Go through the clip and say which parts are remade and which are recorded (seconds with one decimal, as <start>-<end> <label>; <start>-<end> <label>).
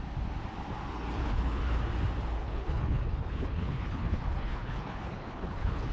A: 0.0-1.2 recorded; 1.2-1.8 remade; 1.8-2.4 recorded; 2.4-5.9 remade